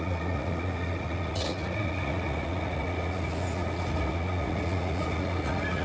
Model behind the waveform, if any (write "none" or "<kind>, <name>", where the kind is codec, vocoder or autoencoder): vocoder, Vocos